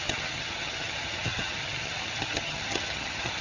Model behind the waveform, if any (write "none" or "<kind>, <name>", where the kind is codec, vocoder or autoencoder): vocoder, HiFi-GAN